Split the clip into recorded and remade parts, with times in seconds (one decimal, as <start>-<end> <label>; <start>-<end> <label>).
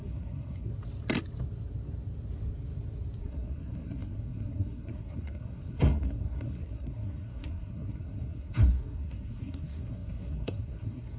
0.0-0.7 remade; 0.7-3.2 recorded; 3.2-11.2 remade